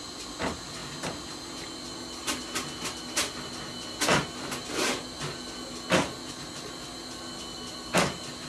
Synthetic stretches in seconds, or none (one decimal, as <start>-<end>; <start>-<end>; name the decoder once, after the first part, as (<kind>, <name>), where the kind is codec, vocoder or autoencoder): none